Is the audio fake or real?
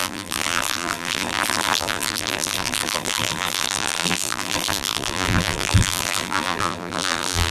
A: fake